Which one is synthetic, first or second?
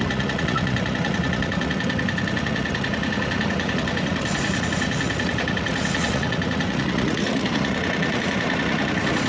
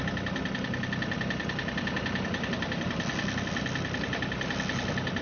first